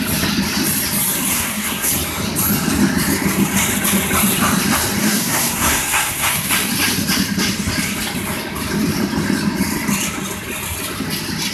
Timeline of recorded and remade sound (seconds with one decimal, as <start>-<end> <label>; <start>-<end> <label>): 0.0-1.3 recorded; 1.3-1.9 remade; 1.9-5.0 recorded; 5.0-6.5 remade; 6.5-11.5 recorded